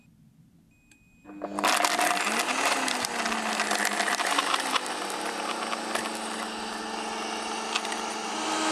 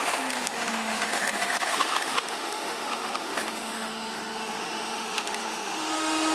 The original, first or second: first